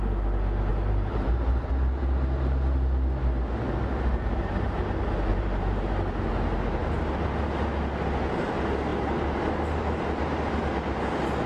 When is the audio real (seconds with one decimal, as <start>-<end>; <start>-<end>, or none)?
0.0-0.7; 1.7-5.3; 6.3-11.5